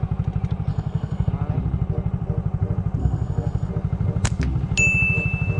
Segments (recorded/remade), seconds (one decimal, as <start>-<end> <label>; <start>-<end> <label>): 0.0-0.7 recorded; 0.7-1.3 remade; 1.3-3.0 recorded; 3.0-3.7 remade; 3.7-5.6 recorded